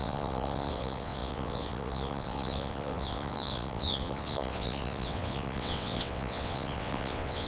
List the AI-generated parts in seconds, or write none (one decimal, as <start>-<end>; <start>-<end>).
0.0-7.5